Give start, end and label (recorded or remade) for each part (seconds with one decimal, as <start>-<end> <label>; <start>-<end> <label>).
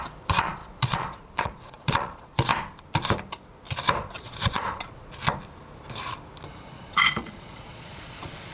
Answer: 0.0-2.5 remade; 2.5-4.2 recorded; 4.2-5.2 remade; 5.2-6.7 recorded; 6.7-8.5 remade